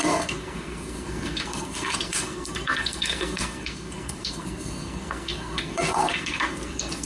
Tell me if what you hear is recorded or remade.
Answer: remade